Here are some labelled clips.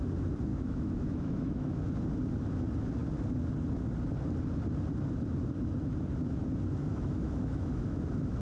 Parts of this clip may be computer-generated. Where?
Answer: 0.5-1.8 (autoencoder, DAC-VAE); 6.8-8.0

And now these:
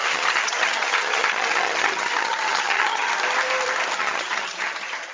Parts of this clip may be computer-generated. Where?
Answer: 0.0-3.1 (vocoder, HiFi-GAN); 4.0-5.1

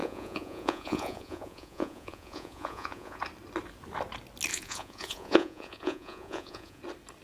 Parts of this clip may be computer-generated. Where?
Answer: 0.0-3.2 (vocoder, Vocos); 4.5-6.8

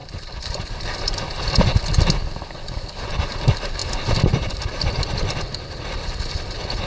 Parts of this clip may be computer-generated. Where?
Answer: none

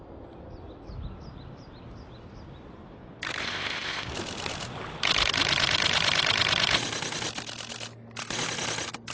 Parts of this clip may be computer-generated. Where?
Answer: 3.4-4.1 (codec, ZipCodec)

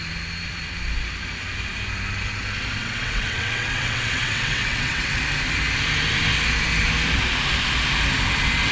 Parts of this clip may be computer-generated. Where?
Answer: 2.8-5.2 (vocoder, WaveNeXt)

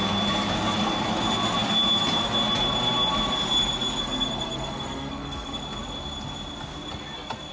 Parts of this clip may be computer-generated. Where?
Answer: 4.0-5.6 (codec, SNAC)